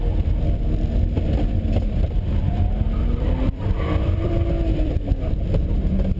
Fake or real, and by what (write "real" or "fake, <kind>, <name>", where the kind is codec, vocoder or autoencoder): fake, vocoder, BigVGAN v2